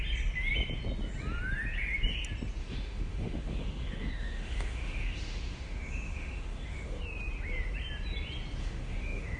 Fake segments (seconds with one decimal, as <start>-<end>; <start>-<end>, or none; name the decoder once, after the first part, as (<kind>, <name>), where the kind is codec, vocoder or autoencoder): 2.6-7.0 (autoencoder, DAC-VAE); 8.6-9.4